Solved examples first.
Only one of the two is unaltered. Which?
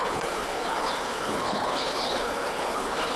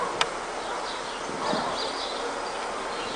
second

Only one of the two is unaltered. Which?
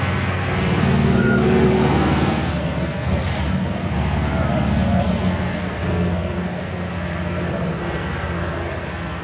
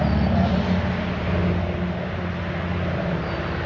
second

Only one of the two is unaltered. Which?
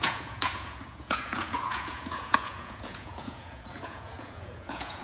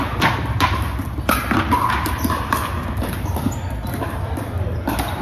second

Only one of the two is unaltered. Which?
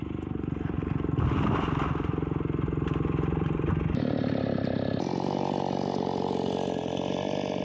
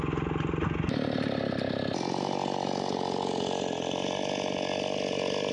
second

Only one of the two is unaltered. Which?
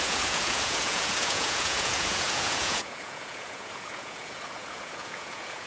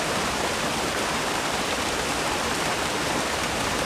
second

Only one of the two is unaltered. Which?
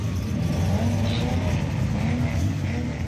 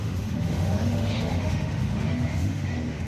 first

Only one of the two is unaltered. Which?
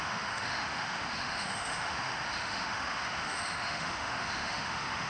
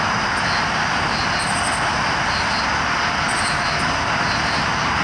second